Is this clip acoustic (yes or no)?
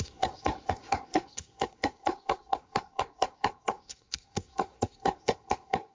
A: no